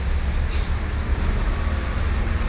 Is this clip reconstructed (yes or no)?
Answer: no